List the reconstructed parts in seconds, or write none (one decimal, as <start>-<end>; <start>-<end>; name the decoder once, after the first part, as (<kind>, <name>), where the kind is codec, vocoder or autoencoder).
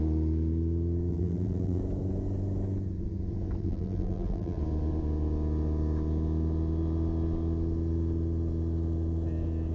1.1-1.8 (vocoder, BigVGAN v2); 3.6-4.6